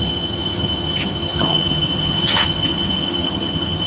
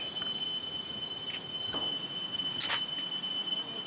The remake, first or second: first